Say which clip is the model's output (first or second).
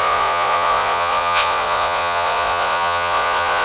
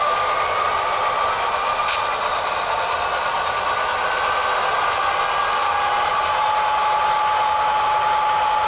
first